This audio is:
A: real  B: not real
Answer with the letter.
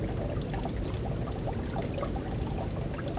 A